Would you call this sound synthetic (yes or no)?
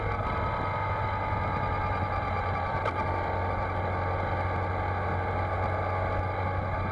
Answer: no